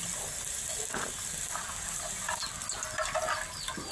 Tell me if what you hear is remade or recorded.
recorded